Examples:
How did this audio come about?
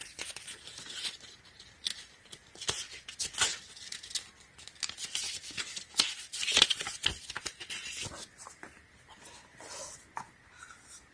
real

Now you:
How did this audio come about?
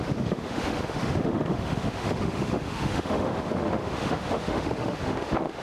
fake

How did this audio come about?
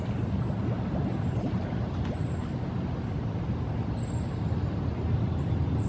real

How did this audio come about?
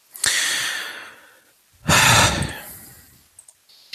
real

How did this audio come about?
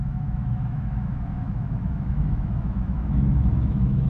fake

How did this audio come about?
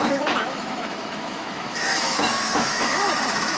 fake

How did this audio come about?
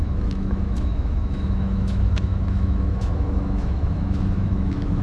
fake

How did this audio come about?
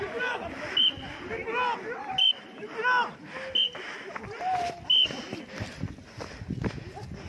real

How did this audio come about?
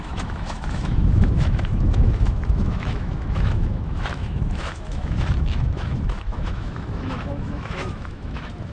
fake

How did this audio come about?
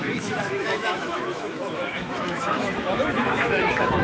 fake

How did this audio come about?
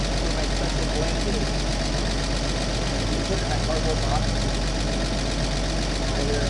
real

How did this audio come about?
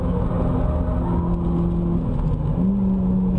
real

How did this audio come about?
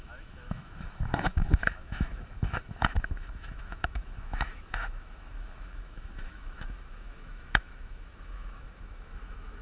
fake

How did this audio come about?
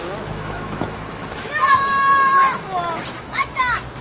fake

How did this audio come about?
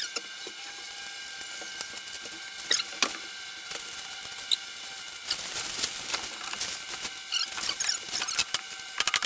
real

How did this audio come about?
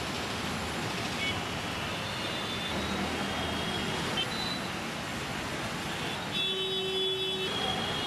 real